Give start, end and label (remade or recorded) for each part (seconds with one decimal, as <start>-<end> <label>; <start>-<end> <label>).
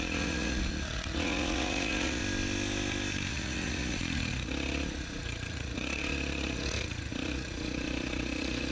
0.0-2.2 remade; 2.2-3.3 recorded; 3.3-8.7 remade